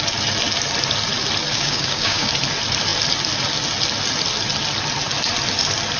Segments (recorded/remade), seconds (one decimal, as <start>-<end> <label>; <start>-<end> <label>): 0.0-1.5 recorded; 1.5-2.3 remade; 2.3-6.0 recorded